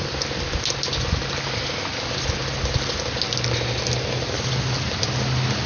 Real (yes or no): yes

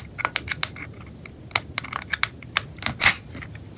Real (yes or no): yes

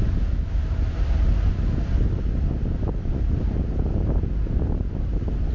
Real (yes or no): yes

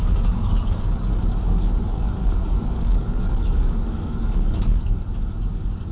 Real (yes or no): no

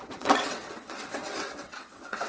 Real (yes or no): no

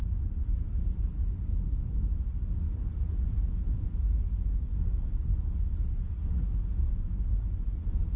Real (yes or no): yes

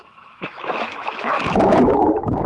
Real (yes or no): no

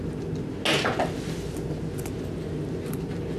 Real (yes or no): yes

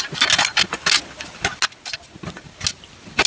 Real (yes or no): yes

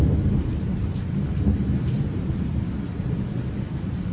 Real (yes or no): yes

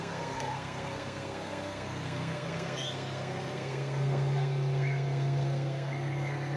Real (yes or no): no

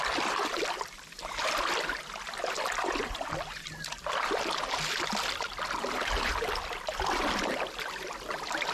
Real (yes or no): yes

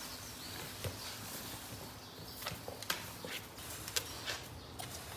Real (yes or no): yes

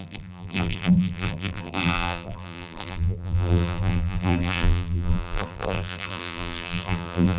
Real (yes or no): no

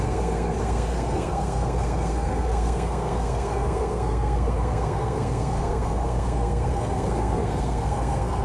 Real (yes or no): no